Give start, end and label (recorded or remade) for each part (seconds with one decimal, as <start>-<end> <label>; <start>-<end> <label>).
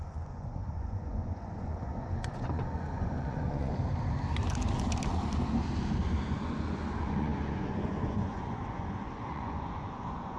0.0-3.7 remade; 3.7-6.2 recorded; 6.2-10.4 remade